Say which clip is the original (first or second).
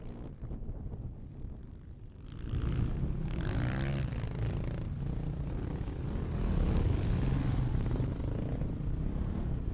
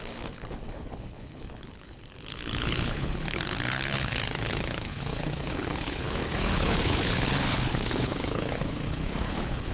first